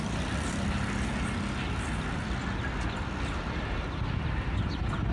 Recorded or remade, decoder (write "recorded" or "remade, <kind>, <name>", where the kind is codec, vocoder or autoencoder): recorded